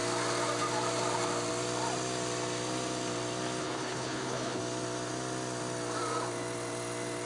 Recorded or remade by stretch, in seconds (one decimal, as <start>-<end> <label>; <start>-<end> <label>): 0.0-3.6 recorded; 3.6-4.6 remade; 4.6-7.3 recorded